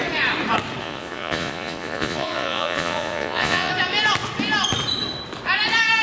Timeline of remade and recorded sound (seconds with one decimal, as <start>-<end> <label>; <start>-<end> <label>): 0.0-0.8 recorded; 0.8-3.7 remade; 3.7-6.0 recorded